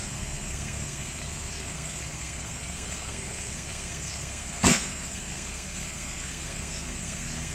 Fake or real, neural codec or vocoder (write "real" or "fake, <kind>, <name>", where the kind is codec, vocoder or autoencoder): fake, codec, SNAC